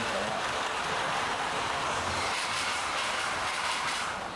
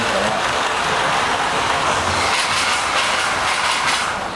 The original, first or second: second